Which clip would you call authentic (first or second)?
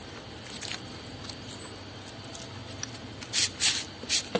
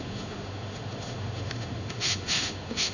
first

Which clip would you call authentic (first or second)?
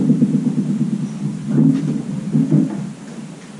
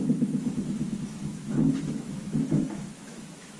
first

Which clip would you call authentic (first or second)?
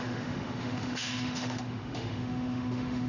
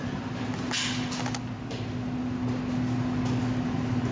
second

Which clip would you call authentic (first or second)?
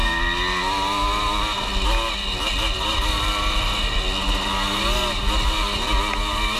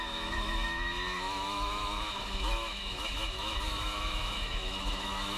first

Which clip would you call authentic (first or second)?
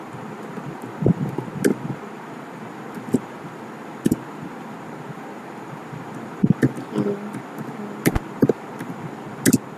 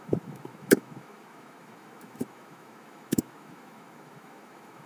first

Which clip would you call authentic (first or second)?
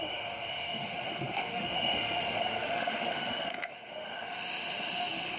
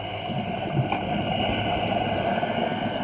second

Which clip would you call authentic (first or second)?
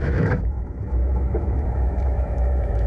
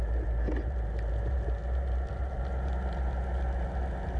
second